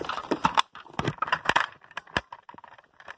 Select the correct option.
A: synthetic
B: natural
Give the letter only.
A